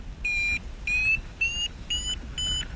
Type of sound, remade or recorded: recorded